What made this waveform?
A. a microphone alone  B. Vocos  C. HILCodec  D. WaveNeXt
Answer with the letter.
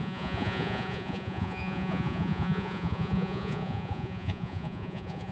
B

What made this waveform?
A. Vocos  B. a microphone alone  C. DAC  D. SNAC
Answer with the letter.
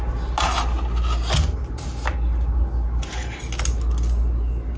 B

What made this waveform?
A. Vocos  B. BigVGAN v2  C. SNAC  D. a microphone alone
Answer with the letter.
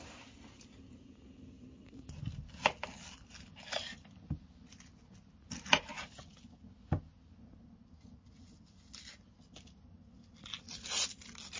D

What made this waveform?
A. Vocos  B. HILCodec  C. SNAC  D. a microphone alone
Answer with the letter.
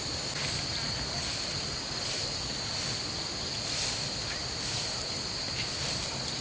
D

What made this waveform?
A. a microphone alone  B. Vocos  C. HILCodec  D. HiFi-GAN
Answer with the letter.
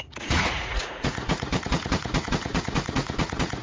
B